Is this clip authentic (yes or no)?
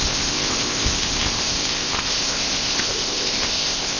no